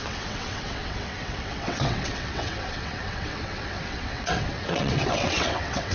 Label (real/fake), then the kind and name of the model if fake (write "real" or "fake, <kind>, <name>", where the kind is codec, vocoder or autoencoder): fake, vocoder, WaveNeXt